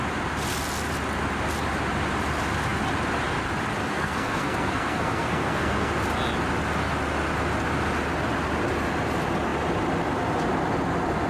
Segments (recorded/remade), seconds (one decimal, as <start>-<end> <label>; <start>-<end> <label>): 0.0-3.8 recorded; 3.8-5.9 remade; 5.9-11.3 recorded